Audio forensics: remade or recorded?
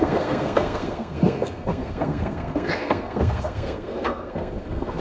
remade